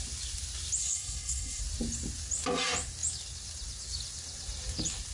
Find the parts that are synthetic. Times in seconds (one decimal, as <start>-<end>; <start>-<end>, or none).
0.8-1.6